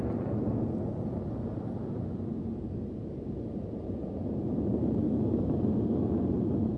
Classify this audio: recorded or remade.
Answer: recorded